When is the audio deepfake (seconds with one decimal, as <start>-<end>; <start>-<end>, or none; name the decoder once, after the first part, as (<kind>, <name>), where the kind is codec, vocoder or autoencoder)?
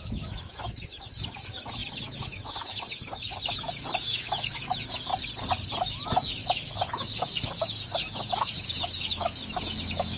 0.0-5.1 (autoencoder, DAC-VAE); 5.8-10.2